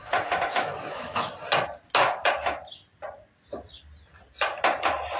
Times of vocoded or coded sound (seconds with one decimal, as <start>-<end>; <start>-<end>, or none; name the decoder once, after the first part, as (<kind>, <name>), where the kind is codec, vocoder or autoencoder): 0.0-1.3 (autoencoder, DAC-VAE)